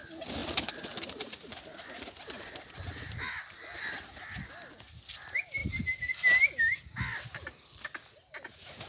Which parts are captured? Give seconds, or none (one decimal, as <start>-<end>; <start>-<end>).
0.0-8.9